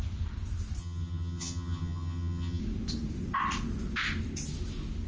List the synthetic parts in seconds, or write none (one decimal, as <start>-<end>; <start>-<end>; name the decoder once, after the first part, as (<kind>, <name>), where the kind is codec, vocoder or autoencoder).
0.8-2.6 (vocoder, HiFi-GAN)